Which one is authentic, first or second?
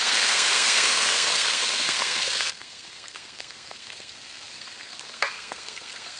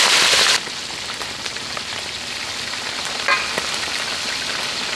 second